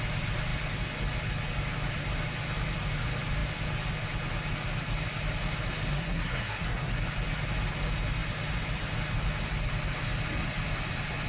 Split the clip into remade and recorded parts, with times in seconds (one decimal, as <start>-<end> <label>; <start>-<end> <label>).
0.0-5.9 recorded; 5.9-6.9 remade; 6.9-11.3 recorded